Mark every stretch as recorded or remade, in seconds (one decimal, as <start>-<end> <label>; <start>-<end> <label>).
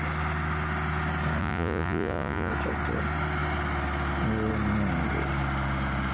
0.0-1.4 recorded; 1.4-2.5 remade; 2.5-6.1 recorded